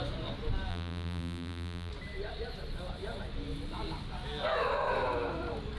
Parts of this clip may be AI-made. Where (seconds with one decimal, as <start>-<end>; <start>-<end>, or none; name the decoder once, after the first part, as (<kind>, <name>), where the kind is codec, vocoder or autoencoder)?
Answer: 0.7-1.9 (vocoder, BigVGAN v2)